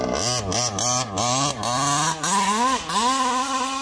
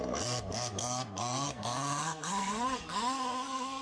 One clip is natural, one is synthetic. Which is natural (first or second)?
first